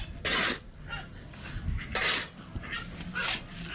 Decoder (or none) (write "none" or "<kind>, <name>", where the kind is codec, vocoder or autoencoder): none